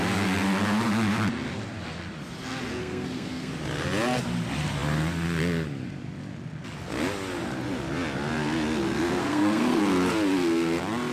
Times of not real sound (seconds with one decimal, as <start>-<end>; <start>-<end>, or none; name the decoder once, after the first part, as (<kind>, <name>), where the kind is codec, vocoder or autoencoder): 2.8-3.5 (codec, SNAC); 9.2-9.8